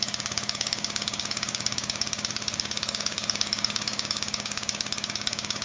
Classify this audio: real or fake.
fake